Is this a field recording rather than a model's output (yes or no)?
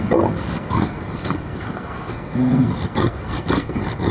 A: no